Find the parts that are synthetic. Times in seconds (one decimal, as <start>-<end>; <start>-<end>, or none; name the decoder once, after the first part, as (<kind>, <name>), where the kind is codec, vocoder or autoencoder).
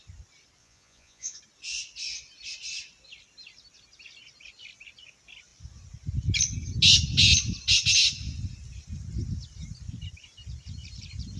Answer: 0.6-1.4 (vocoder, Vocos)